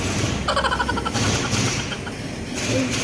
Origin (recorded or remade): recorded